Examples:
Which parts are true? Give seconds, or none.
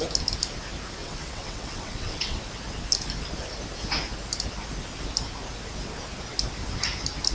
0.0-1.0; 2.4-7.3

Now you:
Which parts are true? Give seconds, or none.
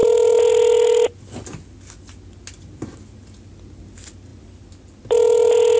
0.0-5.8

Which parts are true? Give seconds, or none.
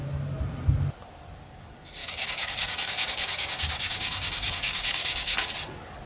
0.0-2.0; 5.5-6.1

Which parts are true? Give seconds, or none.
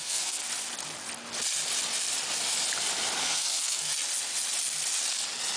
0.4-3.2; 3.9-5.6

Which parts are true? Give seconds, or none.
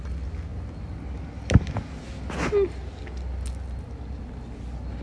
0.0-5.0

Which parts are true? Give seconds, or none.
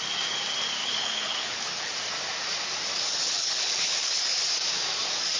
0.0-0.8; 1.9-3.2; 4.2-5.4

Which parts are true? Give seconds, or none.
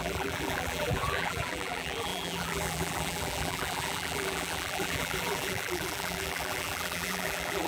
none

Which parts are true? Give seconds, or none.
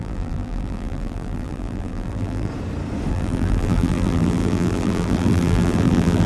2.5-3.1